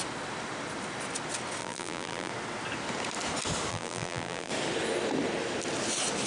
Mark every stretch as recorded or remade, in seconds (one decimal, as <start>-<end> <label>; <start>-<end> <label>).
0.0-1.6 recorded; 1.6-2.3 remade; 2.3-3.7 recorded; 3.7-4.5 remade; 4.5-6.3 recorded